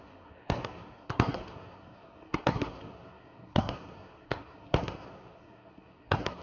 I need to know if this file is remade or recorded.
remade